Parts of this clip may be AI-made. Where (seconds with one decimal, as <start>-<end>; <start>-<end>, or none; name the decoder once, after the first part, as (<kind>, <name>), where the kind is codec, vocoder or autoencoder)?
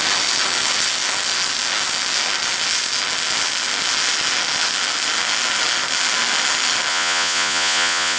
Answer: 6.9-8.2 (vocoder, Vocos)